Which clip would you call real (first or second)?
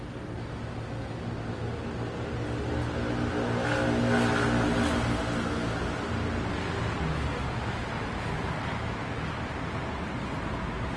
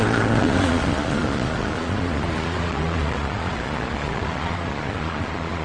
first